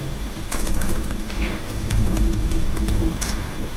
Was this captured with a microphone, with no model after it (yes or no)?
no